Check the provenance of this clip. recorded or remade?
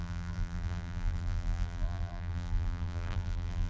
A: remade